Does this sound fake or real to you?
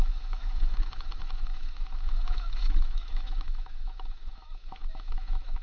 fake